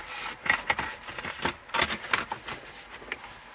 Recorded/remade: recorded